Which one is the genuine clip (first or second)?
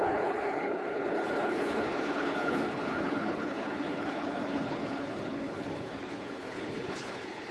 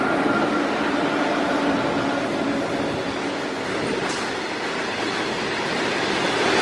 second